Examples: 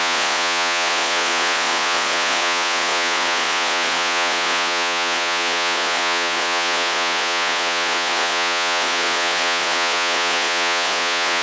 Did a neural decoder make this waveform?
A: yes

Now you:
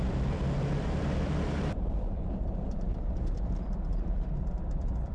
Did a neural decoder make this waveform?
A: yes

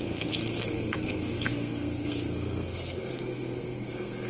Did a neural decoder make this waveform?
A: yes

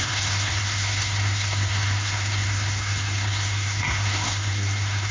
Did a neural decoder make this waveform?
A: yes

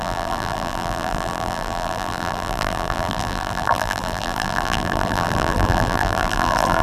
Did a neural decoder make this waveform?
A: yes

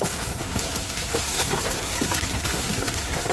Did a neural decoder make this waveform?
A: yes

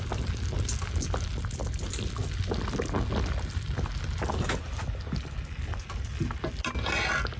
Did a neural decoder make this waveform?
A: no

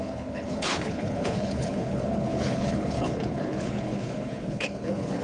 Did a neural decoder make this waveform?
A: yes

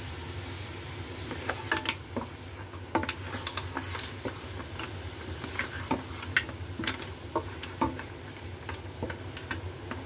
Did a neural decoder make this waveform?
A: no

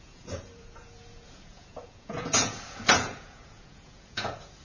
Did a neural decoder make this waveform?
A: yes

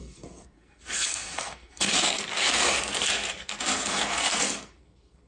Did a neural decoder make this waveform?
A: yes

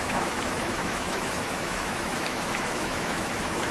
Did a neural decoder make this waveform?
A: yes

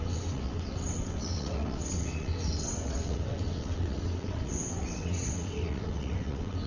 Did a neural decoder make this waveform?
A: yes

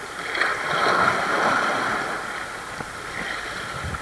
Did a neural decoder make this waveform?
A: no